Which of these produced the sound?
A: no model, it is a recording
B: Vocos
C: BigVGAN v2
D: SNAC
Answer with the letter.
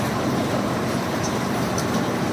C